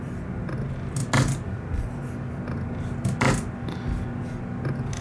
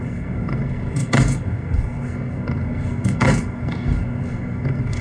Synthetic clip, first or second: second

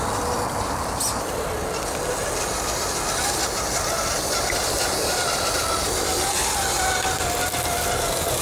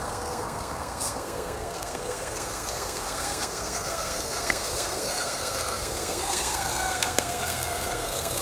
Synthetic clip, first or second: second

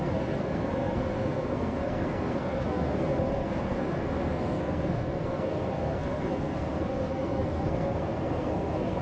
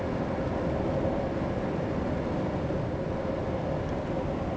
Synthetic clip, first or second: first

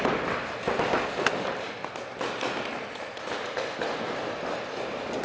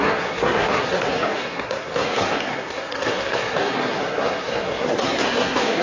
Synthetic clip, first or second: second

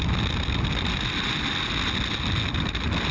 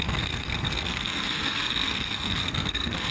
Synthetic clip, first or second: second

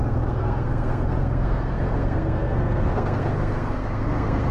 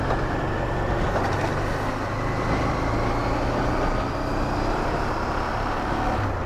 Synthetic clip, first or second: first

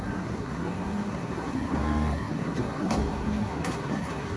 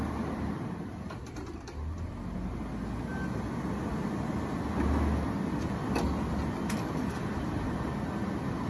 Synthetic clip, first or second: first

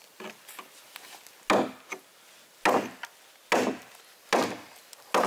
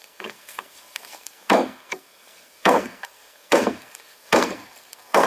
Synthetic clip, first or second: second